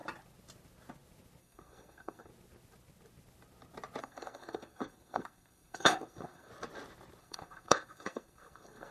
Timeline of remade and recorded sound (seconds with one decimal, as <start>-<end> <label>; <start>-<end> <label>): 0.0-1.4 recorded; 1.4-2.3 remade; 2.3-4.0 recorded; 4.0-6.5 remade; 6.5-7.2 recorded; 7.2-8.9 remade